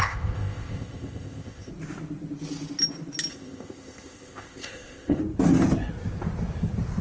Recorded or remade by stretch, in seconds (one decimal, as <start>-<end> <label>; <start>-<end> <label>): 0.0-1.7 remade; 1.7-3.3 recorded; 3.3-5.2 remade; 5.2-7.0 recorded